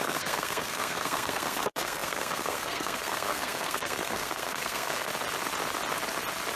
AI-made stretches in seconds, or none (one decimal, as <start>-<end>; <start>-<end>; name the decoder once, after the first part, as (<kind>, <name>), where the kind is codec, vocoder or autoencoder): 0.0-5.1 (codec, SNAC)